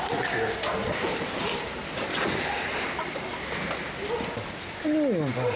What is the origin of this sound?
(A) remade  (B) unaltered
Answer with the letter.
B